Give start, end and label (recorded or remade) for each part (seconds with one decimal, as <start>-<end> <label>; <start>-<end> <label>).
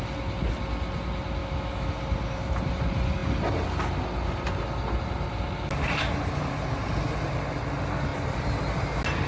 0.0-1.4 recorded; 1.4-1.9 remade; 1.9-9.3 recorded